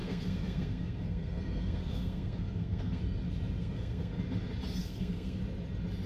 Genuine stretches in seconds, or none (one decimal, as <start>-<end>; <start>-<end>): 3.0-3.6; 4.2-4.8; 5.4-6.1

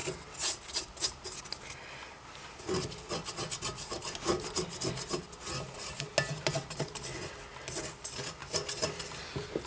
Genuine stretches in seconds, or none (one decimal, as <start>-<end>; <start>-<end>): 0.0-9.7

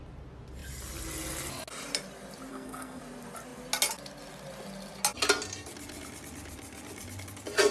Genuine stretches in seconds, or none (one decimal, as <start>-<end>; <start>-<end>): 0.0-2.5; 3.0-7.7